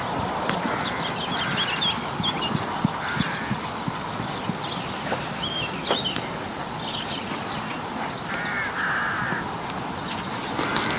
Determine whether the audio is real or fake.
real